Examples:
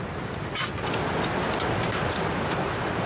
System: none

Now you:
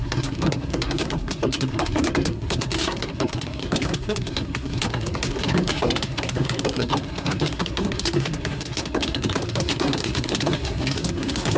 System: codec, SNAC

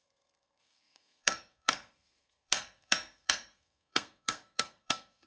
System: codec, SNAC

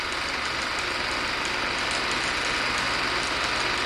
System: none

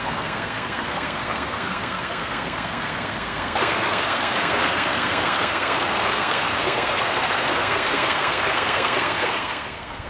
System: codec, SNAC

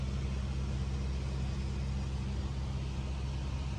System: none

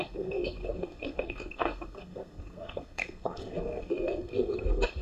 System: codec, SNAC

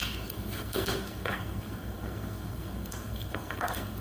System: codec, SNAC